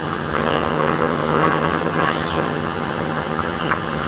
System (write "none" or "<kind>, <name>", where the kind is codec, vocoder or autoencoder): vocoder, HiFi-GAN